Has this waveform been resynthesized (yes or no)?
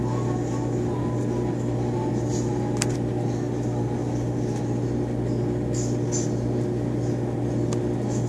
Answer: no